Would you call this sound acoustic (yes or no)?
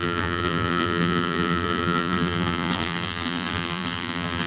no